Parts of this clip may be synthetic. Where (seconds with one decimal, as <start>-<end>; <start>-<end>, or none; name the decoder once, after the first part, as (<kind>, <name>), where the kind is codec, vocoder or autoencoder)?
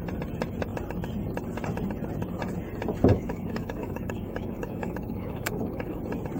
3.1-6.0 (codec, DAC)